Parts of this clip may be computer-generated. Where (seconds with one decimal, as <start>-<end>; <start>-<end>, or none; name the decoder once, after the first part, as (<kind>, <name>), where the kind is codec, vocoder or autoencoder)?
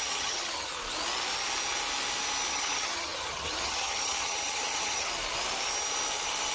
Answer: 0.0-0.7 (vocoder, HiFi-GAN); 2.5-5.1